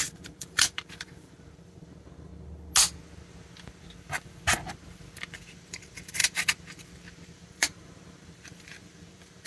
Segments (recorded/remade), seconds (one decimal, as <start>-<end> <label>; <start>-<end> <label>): 0.0-2.3 remade; 2.3-5.3 recorded; 5.3-9.5 remade